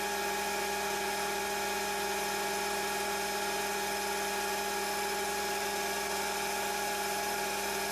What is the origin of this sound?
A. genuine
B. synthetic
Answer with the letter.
A